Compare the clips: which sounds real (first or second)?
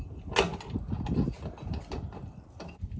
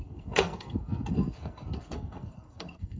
first